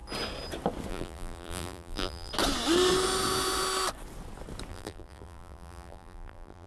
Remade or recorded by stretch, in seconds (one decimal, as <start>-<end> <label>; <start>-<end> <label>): 0.0-0.9 recorded; 0.9-2.3 remade; 2.3-4.7 recorded; 4.7-6.7 remade